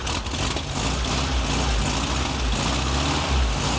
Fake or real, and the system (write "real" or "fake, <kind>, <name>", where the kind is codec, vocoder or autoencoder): real